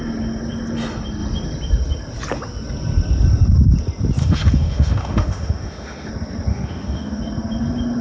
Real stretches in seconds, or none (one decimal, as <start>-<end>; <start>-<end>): 0.0-4.2; 6.1-6.5; 7.2-8.0